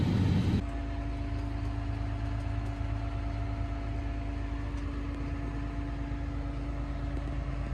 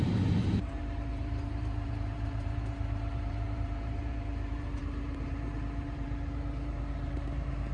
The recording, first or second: first